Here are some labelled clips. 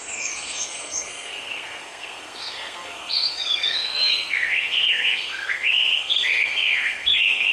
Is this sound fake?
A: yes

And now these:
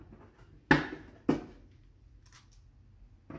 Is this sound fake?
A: no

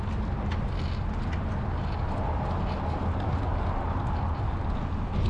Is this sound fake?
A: no